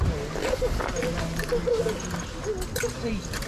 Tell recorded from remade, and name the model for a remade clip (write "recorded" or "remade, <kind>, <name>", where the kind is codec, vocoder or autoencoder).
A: recorded